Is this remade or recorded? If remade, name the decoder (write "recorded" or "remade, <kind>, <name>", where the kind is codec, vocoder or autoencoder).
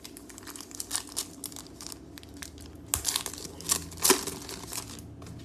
recorded